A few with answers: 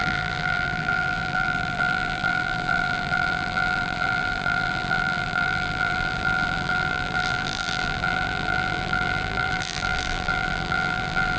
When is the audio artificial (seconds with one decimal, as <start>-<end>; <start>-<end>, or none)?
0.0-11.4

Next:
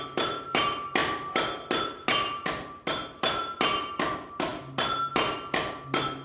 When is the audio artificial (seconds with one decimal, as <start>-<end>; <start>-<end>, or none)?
none

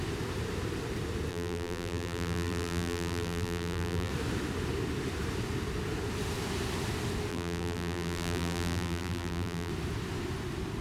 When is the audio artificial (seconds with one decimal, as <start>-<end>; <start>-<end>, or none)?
1.3-4.1; 7.3-9.7

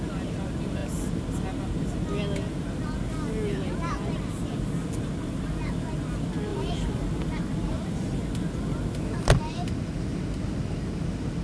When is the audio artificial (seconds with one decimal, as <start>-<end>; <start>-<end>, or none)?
6.5-7.2

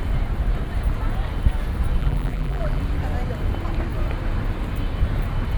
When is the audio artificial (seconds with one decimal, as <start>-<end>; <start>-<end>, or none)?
2.0-2.8

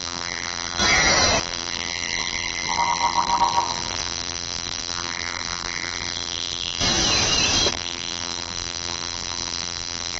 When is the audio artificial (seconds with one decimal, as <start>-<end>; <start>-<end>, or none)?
0.0-0.8; 1.4-6.8; 7.7-10.2

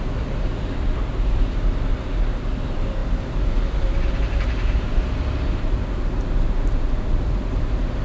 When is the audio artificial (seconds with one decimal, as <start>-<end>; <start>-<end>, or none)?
0.0-1.9; 2.6-4.9; 5.6-8.0

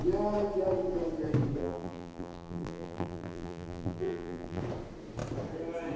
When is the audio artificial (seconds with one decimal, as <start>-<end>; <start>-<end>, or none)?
1.6-4.6